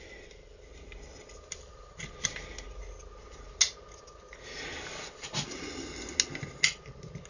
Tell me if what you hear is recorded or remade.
recorded